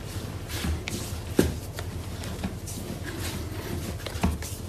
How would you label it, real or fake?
real